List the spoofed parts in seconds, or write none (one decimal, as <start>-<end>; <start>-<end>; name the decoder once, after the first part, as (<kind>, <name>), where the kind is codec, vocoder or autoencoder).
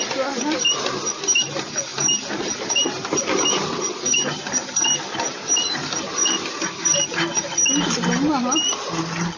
none